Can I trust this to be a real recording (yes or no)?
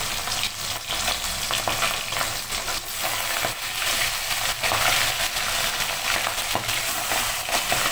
yes